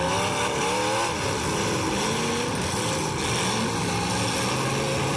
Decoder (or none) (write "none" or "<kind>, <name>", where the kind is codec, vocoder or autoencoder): none